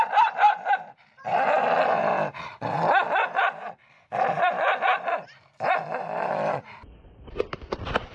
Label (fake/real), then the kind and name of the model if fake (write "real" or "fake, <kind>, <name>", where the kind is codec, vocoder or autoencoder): fake, vocoder, BigVGAN v2